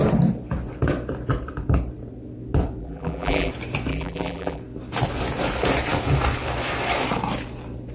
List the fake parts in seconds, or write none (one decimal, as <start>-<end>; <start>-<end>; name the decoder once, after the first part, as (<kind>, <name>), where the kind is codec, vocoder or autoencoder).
2.8-3.5 (vocoder, BigVGAN v2); 3.9-4.6